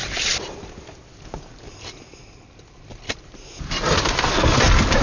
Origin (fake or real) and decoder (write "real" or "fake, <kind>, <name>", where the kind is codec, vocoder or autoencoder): real